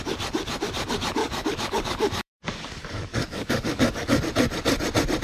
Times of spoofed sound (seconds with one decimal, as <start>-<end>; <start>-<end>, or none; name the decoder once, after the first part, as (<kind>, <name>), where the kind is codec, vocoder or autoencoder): 1.2-4.2 (codec, DAC)